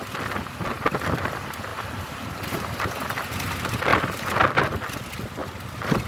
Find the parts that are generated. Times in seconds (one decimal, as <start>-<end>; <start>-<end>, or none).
1.7-2.9; 3.9-4.4